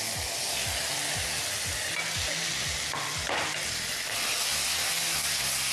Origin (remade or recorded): recorded